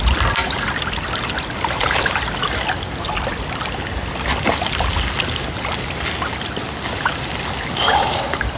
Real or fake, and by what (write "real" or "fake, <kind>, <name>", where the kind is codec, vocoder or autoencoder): real